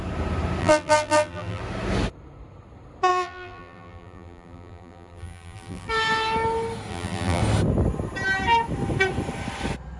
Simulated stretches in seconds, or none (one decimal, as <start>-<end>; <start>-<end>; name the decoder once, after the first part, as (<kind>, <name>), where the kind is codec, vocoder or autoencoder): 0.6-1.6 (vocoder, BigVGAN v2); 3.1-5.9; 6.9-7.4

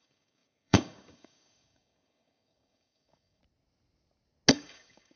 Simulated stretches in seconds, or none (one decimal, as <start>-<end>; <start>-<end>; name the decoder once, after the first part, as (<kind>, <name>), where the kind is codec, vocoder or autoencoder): 0.0-3.4 (codec, DAC); 4.5-5.2

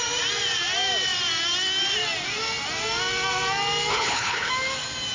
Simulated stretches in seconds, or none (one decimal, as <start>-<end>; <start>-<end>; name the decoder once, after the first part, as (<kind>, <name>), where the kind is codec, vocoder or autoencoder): 3.9-4.5 (codec, HILCodec)